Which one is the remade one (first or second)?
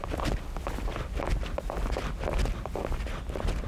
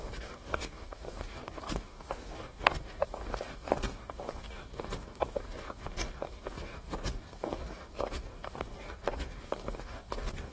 second